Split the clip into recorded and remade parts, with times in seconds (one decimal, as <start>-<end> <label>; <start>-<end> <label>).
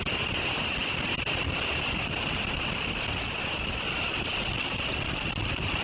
0.0-5.8 recorded